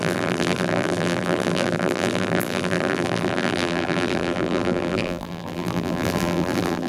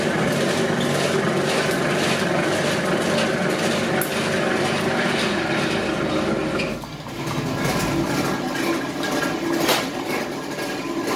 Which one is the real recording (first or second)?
second